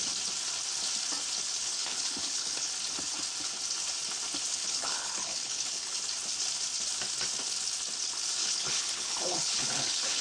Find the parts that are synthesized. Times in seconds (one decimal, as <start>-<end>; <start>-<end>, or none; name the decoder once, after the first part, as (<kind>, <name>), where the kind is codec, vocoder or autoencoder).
1.6-2.7 (codec, HILCodec); 4.5-6.0; 8.4-10.2